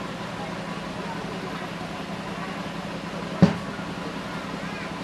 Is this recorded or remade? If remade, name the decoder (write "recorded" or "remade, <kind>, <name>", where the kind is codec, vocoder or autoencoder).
recorded